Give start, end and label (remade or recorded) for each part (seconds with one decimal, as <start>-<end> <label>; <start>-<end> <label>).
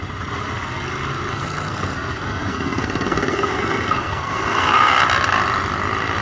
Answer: 0.0-1.3 recorded; 1.3-5.0 remade; 5.0-6.2 recorded